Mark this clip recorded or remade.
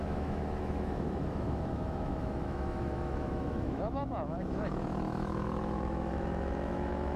remade